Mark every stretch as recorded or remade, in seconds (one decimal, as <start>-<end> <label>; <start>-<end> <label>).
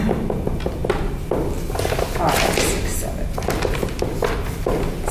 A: 0.0-5.1 recorded